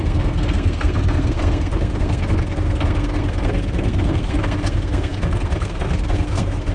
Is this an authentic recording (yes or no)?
no